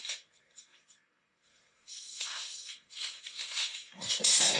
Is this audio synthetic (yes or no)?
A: yes